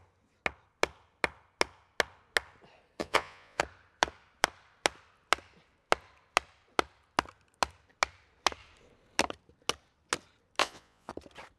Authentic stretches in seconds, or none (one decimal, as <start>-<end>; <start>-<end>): 0.0-3.0; 3.6-10.6; 11.1-11.6